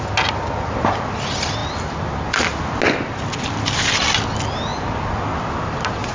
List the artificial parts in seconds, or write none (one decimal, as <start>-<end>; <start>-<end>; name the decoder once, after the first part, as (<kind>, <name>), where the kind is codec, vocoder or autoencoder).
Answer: none